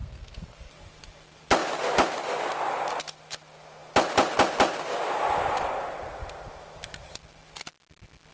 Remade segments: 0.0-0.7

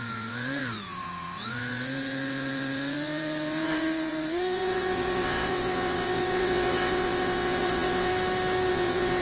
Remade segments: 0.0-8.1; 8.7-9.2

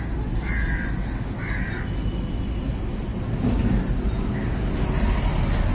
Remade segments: none

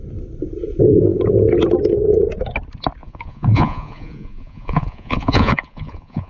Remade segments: 3.0-6.3

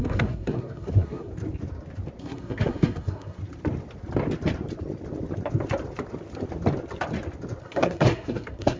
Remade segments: 0.0-1.3; 2.2-3.4; 7.6-8.8

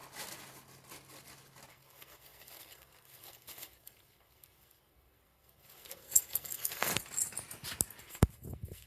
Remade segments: 1.7-6.9; 8.0-8.9

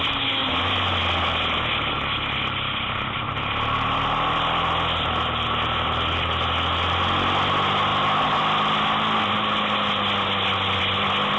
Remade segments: none